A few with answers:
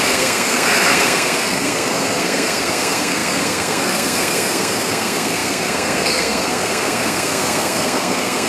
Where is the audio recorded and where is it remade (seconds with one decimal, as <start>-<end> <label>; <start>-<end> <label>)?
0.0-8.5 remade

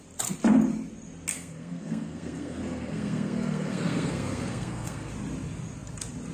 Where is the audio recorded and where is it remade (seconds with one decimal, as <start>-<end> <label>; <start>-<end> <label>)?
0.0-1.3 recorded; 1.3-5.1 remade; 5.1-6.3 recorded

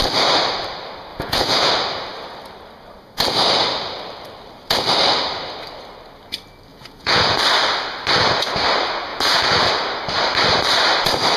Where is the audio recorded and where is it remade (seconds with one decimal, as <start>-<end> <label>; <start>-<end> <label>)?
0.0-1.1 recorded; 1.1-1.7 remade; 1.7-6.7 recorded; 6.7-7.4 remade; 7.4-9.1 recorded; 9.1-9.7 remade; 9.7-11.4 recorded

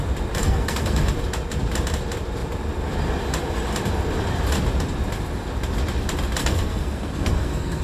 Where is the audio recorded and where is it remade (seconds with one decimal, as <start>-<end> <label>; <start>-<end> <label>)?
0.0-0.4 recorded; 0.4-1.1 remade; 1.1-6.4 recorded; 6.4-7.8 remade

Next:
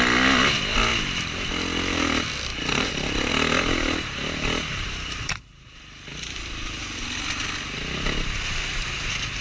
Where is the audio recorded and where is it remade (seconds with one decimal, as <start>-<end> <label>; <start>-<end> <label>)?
0.0-2.5 recorded; 2.5-3.3 remade; 3.3-4.7 recorded; 4.7-6.0 remade; 6.0-9.4 recorded

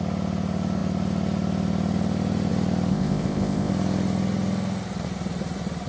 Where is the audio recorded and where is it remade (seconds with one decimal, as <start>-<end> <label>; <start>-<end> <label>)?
0.0-2.9 recorded; 2.9-3.7 remade; 3.7-5.9 recorded

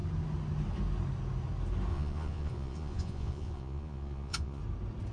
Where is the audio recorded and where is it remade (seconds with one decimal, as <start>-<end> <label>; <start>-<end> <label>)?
0.0-1.9 recorded; 1.9-4.6 remade; 4.6-5.1 recorded